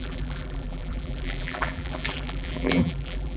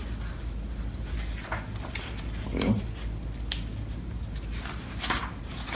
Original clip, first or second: second